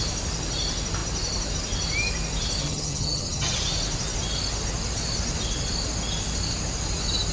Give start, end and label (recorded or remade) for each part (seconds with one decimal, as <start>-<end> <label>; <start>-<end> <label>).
0.0-2.6 recorded; 2.6-3.6 remade; 3.6-7.3 recorded